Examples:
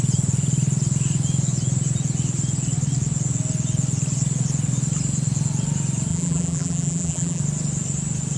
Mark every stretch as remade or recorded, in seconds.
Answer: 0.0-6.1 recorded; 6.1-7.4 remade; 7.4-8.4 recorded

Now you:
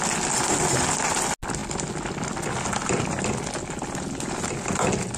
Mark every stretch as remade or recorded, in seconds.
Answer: 0.0-5.2 recorded

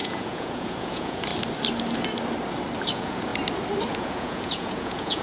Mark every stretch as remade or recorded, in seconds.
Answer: 0.0-1.3 remade; 1.3-2.9 recorded; 2.9-3.3 remade; 3.3-3.9 recorded; 3.9-5.2 remade

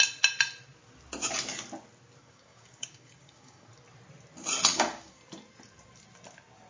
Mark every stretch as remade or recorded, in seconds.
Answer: 0.0-2.2 recorded; 2.2-3.7 remade; 3.7-4.7 recorded; 4.7-5.2 remade; 5.2-6.7 recorded

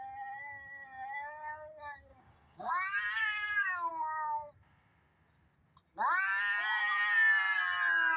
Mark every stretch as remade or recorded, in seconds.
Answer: 0.0-2.1 recorded; 2.1-2.7 remade; 2.7-3.2 recorded; 3.2-3.9 remade; 3.9-8.2 recorded